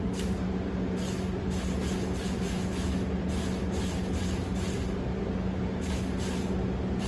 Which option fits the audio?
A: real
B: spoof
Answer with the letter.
A